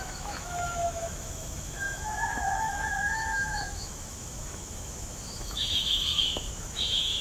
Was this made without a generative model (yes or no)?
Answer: no